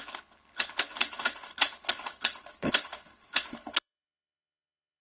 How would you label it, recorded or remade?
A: remade